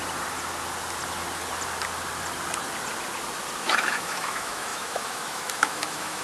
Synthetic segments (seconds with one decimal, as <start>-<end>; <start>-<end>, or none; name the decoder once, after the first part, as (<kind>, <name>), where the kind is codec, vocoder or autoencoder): 3.6-6.2 (autoencoder, DAC-VAE)

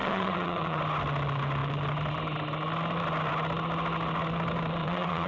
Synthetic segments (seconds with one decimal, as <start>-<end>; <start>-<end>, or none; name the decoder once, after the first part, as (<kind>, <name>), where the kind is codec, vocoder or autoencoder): 0.0-0.8 (vocoder, WaveNeXt); 4.8-5.3

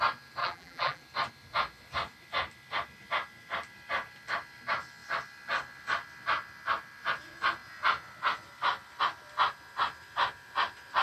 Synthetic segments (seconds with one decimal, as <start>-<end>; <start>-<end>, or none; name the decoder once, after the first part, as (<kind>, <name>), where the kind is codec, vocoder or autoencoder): 0.4-1.0 (vocoder, BigVGAN v2)

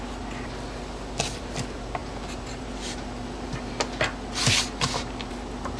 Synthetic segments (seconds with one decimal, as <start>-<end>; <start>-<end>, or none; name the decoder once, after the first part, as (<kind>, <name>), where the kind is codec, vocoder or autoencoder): none

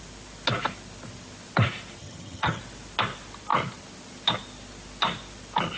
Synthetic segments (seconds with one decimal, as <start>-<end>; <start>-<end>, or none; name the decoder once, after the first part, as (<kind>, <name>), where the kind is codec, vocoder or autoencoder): 2.0-2.6 (vocoder, HiFi-GAN)

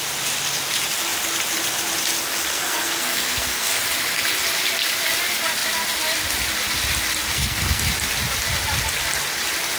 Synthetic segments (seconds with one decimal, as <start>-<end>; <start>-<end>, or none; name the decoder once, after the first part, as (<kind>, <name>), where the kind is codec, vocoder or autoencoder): 2.5-3.8 (codec, SNAC); 7.3-7.9

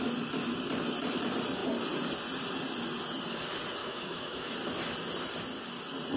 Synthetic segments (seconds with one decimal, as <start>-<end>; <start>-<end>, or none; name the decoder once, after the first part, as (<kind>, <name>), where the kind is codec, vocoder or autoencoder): 3.8-4.5 (autoencoder, DAC-VAE)

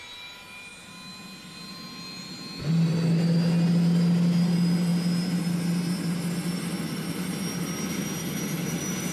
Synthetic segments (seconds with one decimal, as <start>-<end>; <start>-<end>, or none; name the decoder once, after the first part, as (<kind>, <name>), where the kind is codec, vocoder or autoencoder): none